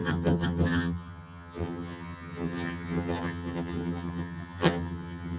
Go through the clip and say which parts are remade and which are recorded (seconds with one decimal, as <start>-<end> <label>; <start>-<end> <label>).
0.0-5.4 remade